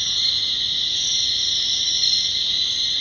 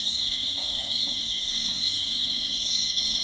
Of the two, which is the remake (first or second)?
second